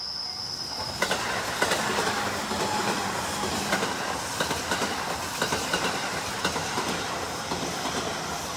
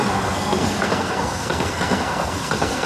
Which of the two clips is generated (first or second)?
second